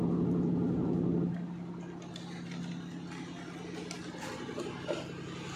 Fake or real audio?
real